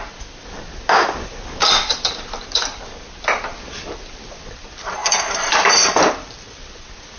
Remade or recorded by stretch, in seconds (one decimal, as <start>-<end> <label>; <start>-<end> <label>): 0.0-7.2 recorded